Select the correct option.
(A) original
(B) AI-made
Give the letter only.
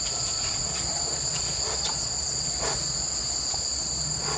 B